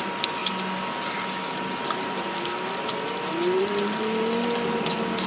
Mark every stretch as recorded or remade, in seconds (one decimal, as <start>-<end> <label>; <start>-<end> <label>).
0.0-5.3 recorded